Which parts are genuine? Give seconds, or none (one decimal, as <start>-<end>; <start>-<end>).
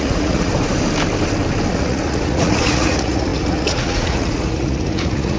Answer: 0.5-1.7